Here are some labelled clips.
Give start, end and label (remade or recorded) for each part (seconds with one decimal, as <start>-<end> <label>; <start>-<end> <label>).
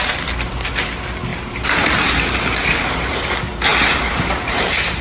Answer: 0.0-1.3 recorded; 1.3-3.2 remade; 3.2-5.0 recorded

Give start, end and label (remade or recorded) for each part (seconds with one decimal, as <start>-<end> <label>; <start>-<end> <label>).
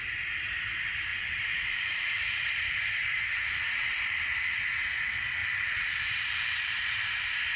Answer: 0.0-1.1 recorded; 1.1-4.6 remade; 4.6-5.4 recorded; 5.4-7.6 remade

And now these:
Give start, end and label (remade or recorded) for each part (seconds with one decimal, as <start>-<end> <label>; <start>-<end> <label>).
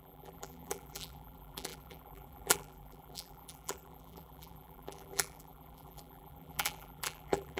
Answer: 0.0-7.6 remade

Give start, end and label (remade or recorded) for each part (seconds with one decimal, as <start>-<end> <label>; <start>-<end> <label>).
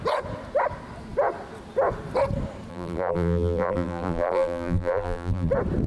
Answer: 0.0-2.7 recorded; 2.7-5.5 remade; 5.5-5.9 recorded